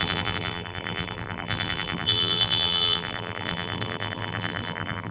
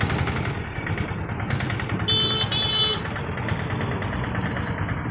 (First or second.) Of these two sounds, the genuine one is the second